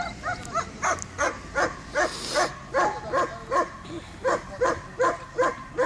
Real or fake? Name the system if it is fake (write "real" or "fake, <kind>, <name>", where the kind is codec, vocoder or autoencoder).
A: real